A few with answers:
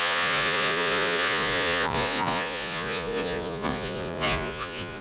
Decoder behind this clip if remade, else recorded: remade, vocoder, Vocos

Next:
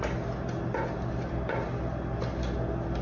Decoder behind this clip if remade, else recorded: recorded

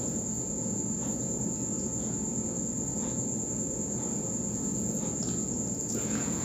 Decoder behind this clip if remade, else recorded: remade, vocoder, Vocos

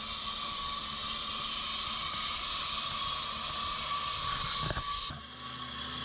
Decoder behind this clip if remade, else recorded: recorded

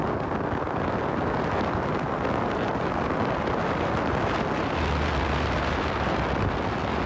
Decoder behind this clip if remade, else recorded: recorded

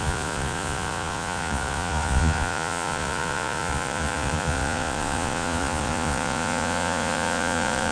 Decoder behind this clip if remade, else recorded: remade, vocoder, Vocos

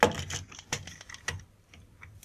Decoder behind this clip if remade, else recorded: recorded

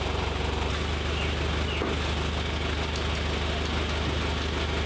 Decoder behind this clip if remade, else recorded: recorded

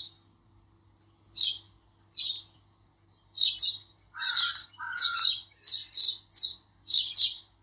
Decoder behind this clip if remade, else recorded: recorded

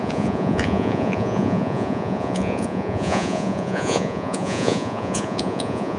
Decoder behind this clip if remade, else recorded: remade, vocoder, Vocos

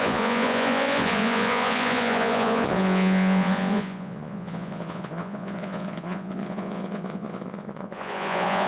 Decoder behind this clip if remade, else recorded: remade, vocoder, Vocos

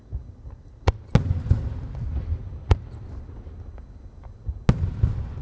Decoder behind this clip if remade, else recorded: recorded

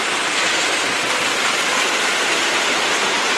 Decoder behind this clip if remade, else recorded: recorded